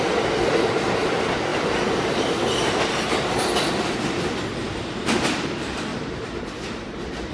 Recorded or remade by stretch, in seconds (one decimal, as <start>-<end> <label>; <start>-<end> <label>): 0.0-5.9 remade; 5.9-7.3 recorded